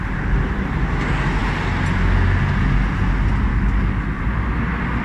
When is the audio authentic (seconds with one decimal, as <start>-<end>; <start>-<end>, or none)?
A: 0.0-3.5; 4.2-5.0